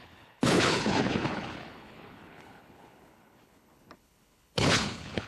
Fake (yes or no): yes